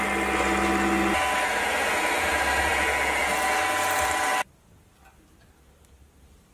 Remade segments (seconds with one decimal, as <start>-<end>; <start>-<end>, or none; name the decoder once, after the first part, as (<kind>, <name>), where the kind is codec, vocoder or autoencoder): none